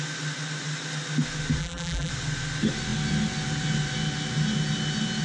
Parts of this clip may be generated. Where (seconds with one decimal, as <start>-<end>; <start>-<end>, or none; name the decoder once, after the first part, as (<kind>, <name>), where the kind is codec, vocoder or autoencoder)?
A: 1.6-2.1 (vocoder, BigVGAN v2)